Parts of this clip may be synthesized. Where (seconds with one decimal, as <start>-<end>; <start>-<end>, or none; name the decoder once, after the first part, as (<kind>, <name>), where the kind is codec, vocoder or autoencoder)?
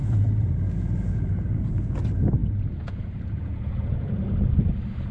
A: 0.0-2.0 (vocoder, Vocos); 2.4-4.2